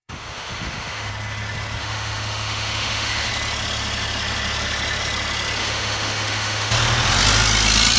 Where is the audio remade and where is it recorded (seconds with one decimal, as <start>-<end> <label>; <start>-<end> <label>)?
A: 0.0-1.1 remade; 1.1-1.8 recorded; 1.8-3.3 remade; 3.3-5.6 recorded; 5.6-6.7 remade; 6.7-8.0 recorded